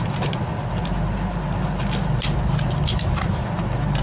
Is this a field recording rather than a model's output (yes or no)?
yes